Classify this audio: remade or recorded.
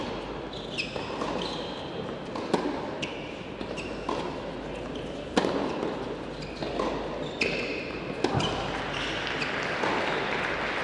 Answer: recorded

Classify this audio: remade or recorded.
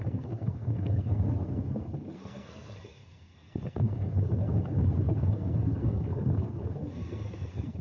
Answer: remade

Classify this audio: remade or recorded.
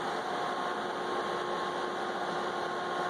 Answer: recorded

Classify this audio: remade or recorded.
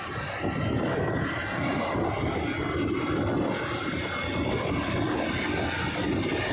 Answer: recorded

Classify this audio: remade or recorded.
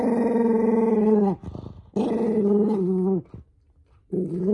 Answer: recorded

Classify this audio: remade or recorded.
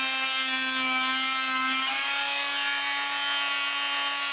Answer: recorded